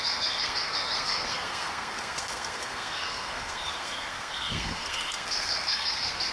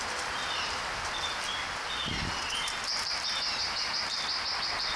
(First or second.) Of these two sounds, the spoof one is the first